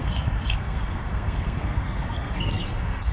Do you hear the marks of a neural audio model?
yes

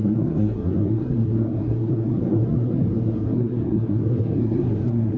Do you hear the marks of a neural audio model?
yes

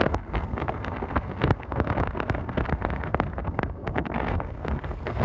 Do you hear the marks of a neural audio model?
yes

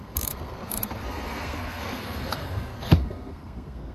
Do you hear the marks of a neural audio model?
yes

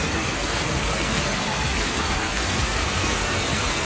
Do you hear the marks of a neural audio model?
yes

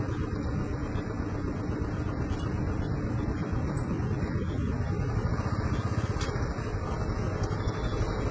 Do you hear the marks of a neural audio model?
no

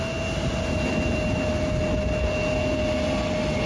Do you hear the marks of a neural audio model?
no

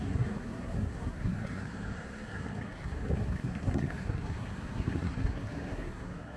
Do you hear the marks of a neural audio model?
yes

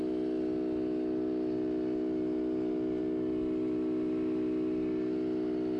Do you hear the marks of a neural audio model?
no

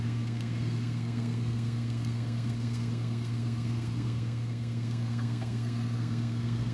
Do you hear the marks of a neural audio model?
yes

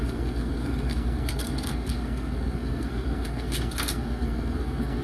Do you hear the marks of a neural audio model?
yes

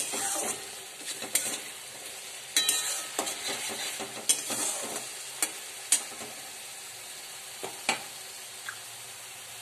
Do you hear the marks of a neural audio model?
no